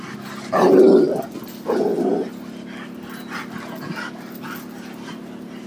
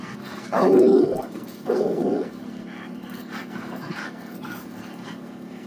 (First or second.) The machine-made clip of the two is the second